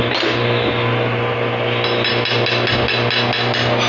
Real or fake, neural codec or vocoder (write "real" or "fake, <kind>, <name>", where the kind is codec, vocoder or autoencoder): real